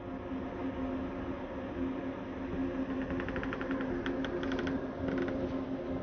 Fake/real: real